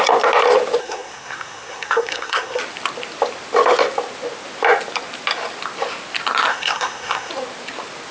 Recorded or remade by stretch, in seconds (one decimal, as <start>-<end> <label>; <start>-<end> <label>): 0.0-0.8 recorded; 0.8-2.6 remade; 2.6-6.5 recorded; 6.5-7.3 remade; 7.3-8.1 recorded